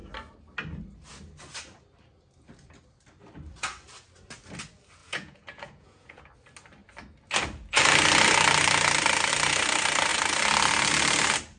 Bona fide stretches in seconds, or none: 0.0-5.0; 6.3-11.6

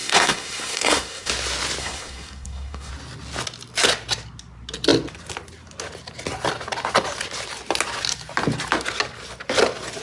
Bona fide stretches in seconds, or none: 1.3-1.8; 2.9-10.0

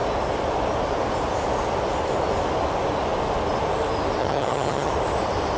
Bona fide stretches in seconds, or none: 0.0-4.2; 4.9-5.6